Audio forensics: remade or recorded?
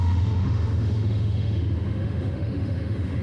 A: remade